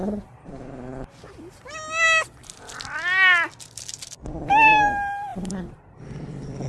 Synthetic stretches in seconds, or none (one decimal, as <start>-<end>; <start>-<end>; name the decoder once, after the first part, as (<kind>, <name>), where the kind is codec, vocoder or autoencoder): 5.3-6.7 (vocoder, BigVGAN v2)